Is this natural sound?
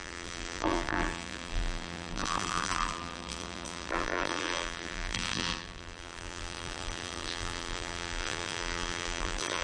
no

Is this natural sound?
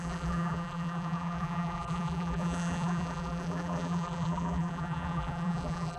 no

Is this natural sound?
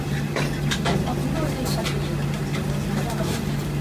yes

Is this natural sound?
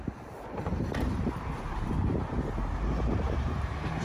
no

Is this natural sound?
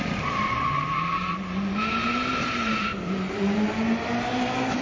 no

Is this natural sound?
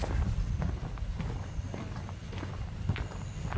yes